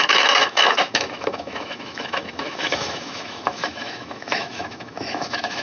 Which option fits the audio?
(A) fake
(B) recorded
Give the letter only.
A